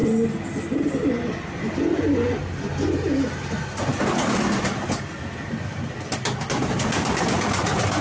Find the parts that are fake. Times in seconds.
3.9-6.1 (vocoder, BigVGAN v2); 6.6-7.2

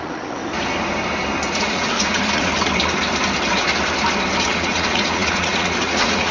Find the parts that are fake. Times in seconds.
0.0-0.4 (vocoder, Vocos); 1.5-2.5; 4.5-6.3

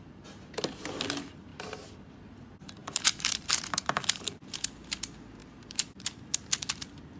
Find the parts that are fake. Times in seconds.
2.8-5.0 (vocoder, BigVGAN v2); 5.4-6.2